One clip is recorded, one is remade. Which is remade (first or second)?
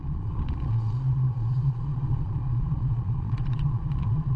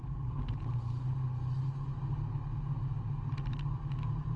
first